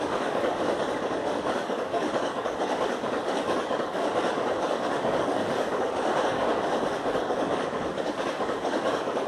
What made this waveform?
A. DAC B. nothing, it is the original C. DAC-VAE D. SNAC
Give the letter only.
A